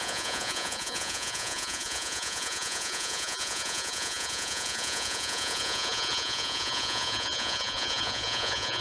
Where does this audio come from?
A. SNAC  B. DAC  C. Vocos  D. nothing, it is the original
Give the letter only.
C